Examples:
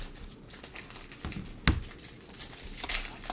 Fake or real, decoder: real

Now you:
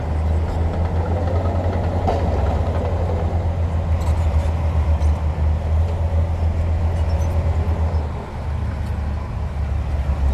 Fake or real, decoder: real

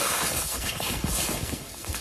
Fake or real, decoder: fake, codec, SNAC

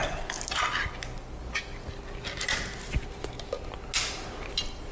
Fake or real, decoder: real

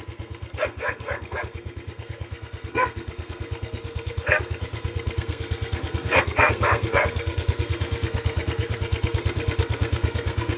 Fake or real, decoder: fake, codec, SNAC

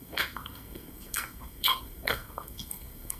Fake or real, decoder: fake, codec, SNAC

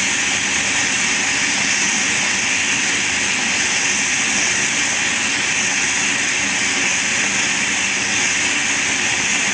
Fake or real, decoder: real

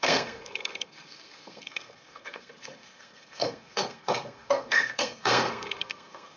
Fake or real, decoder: fake, codec, SNAC